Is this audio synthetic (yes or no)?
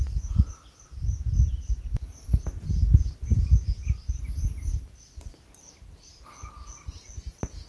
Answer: no